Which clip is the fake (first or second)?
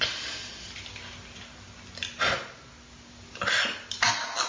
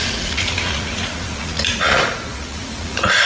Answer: second